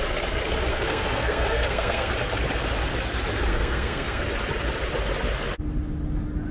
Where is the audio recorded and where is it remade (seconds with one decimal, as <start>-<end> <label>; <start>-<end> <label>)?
0.0-0.7 recorded; 0.7-2.1 remade; 2.1-3.5 recorded; 3.5-4.2 remade; 4.2-6.5 recorded